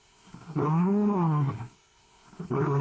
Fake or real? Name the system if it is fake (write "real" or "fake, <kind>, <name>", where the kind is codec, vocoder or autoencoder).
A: fake, codec, SNAC